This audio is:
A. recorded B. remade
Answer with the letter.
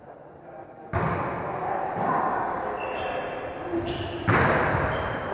A